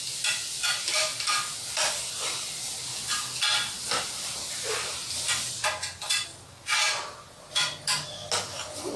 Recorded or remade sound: recorded